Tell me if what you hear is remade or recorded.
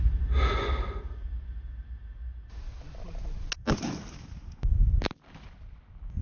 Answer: recorded